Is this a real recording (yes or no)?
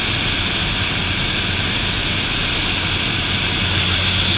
yes